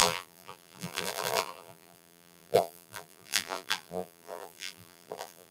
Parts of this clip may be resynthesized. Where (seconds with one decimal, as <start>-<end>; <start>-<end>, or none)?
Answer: 0.0-5.5